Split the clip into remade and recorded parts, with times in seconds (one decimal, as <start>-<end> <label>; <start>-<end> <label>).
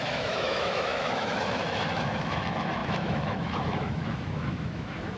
0.0-5.2 remade